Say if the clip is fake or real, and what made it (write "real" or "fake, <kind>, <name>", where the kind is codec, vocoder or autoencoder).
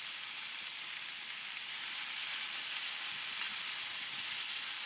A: real